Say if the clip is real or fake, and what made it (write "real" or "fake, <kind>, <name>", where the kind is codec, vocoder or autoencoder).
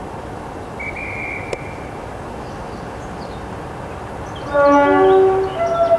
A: real